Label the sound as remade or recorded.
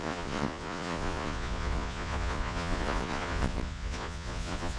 remade